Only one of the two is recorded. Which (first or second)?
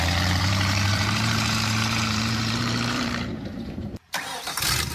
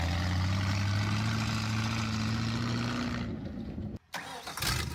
second